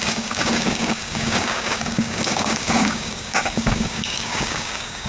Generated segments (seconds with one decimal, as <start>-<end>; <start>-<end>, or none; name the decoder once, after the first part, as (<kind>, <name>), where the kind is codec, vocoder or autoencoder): 0.0-5.1 (codec, DAC)